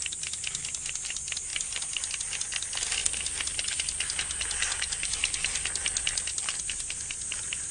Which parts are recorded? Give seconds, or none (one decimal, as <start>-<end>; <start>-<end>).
0.0-7.7